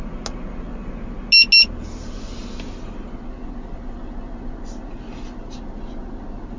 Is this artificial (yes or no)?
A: no